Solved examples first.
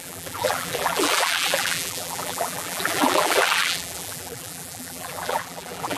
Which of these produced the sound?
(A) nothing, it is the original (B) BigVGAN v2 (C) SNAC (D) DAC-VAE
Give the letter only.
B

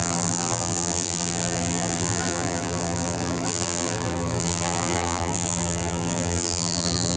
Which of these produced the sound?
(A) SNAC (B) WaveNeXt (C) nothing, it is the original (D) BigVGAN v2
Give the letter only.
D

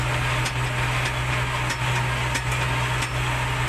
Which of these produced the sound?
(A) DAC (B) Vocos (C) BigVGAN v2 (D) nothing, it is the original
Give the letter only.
D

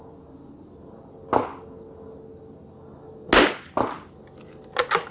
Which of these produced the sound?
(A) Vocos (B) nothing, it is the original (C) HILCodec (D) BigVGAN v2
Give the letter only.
B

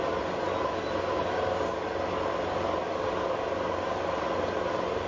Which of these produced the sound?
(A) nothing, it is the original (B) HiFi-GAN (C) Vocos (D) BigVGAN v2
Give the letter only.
A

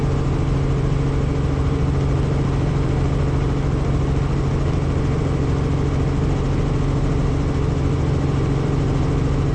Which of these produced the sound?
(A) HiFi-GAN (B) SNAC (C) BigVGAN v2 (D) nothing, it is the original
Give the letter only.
D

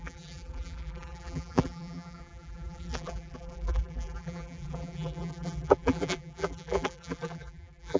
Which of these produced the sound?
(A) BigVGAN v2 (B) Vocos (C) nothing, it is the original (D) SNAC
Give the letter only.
A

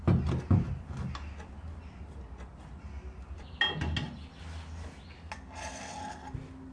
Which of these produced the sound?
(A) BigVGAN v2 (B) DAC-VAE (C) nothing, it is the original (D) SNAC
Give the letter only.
C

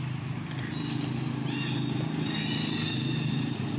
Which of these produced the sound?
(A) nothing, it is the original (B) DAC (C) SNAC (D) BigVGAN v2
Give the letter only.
A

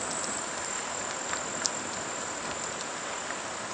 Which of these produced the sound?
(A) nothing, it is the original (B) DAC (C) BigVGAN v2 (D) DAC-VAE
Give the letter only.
A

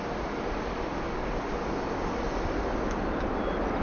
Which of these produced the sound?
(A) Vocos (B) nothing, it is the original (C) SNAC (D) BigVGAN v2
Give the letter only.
B